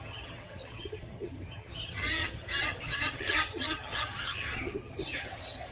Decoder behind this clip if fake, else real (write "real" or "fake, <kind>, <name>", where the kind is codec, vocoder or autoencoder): fake, vocoder, HiFi-GAN